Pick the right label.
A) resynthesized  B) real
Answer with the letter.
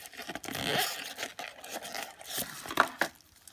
B